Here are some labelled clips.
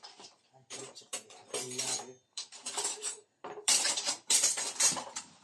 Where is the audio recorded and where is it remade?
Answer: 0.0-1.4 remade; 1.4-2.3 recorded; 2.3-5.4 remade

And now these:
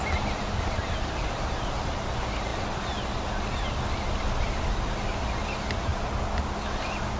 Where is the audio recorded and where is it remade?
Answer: 0.0-7.2 recorded

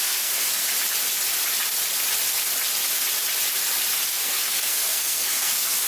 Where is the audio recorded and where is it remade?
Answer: 0.0-0.6 remade; 0.6-4.1 recorded; 4.1-5.9 remade

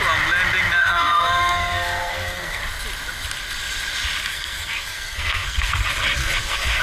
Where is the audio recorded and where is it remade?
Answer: 0.0-0.8 recorded; 0.8-2.6 remade; 2.6-4.3 recorded; 4.3-5.8 remade; 5.8-6.2 recorded; 6.2-6.8 remade

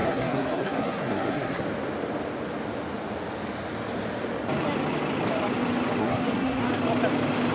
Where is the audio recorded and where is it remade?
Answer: 0.0-1.6 remade; 1.6-6.0 recorded; 6.0-6.6 remade; 6.6-7.5 recorded

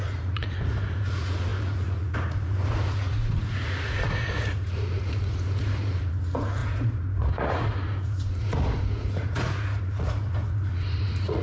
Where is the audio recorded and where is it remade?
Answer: 0.0-11.4 remade